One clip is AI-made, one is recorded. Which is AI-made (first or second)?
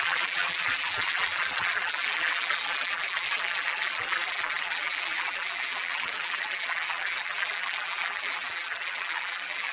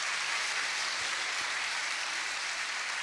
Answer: first